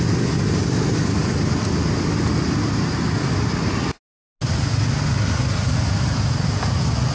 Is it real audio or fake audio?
real